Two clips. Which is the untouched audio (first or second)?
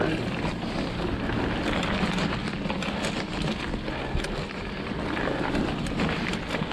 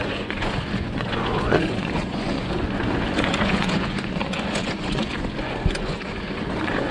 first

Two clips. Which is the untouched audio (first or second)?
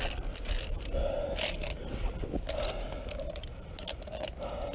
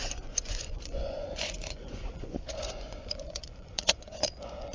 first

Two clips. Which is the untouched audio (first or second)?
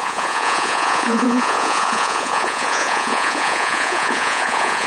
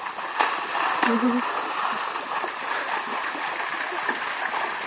second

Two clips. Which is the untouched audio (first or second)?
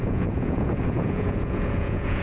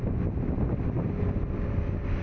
second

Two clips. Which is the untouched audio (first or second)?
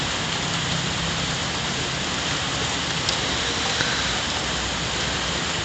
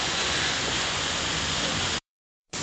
first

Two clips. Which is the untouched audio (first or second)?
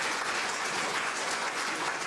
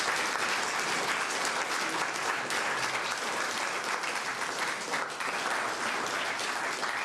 second